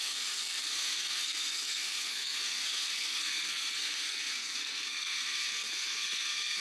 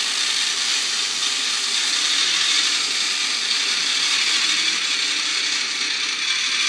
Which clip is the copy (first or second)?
first